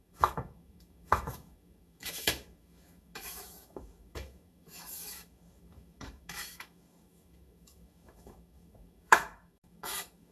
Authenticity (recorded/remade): remade